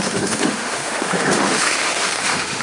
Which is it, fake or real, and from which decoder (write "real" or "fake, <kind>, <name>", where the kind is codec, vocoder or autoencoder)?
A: fake, autoencoder, DAC-VAE